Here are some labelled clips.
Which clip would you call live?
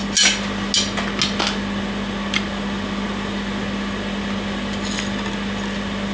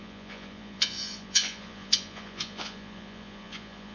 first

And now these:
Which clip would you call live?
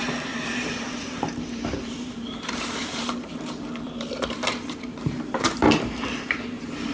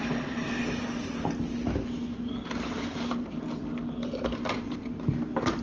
second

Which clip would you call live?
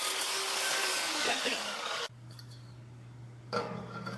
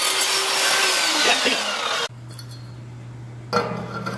second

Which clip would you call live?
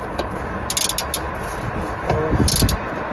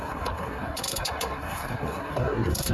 first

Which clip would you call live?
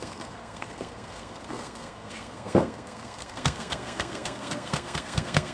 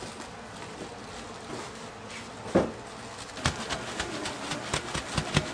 second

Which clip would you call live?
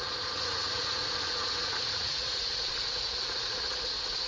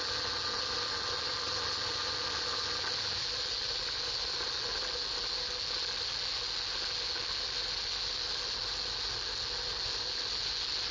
second